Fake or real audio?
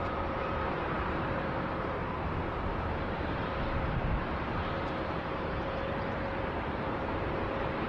fake